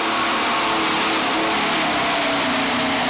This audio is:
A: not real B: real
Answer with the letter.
B